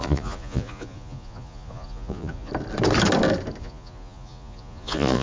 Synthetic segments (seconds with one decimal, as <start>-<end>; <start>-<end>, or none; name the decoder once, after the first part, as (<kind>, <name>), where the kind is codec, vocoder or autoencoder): 0.0-2.5 (vocoder, Vocos); 3.6-5.2